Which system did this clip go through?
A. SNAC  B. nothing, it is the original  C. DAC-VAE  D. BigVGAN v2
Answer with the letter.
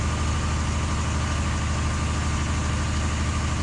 B